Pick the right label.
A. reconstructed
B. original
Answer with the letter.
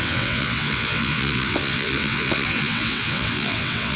A